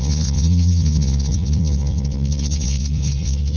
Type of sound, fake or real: fake